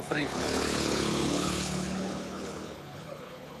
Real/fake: fake